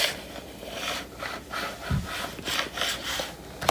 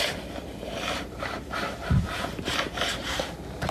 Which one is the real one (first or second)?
first